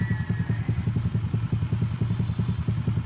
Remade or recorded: recorded